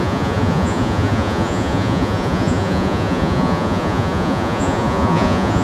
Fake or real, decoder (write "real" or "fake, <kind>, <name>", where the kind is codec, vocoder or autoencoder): fake, vocoder, Vocos